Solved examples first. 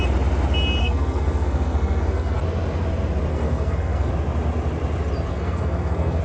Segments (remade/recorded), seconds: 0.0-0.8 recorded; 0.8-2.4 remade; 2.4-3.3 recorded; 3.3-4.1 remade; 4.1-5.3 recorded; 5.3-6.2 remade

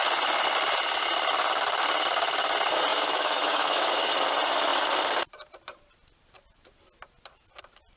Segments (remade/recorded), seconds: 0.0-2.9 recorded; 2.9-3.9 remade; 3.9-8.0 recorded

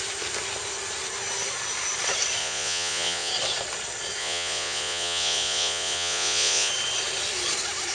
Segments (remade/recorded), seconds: 0.0-2.4 recorded; 2.4-3.3 remade; 3.3-4.2 recorded; 4.2-6.7 remade; 6.7-7.9 recorded

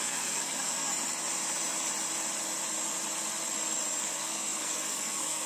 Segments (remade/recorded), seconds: 0.0-0.9 remade; 0.9-4.0 recorded; 4.0-5.5 remade

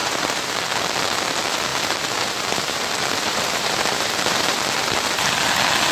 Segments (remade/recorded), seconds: 0.0-0.5 remade; 0.5-1.7 recorded; 1.7-4.5 remade; 4.5-5.9 recorded

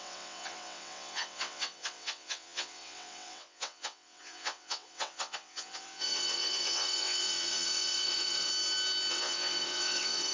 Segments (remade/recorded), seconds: 0.0-8.5 remade; 8.5-9.1 recorded; 9.1-10.3 remade

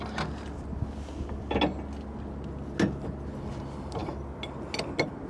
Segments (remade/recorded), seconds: 0.0-5.3 recorded

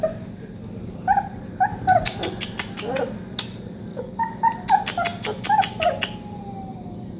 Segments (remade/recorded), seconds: 0.0-3.9 recorded; 3.9-4.4 remade; 4.4-7.2 recorded